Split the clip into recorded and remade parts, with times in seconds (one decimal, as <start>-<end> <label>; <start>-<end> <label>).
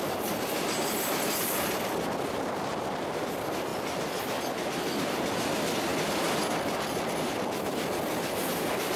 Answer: 0.0-9.0 recorded